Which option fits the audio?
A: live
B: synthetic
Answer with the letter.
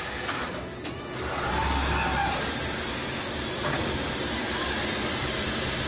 A